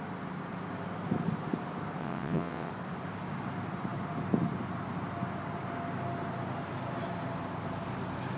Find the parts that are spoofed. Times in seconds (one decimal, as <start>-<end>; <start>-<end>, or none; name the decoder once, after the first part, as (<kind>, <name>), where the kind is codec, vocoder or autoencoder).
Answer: 2.0-2.7 (vocoder, WaveNeXt)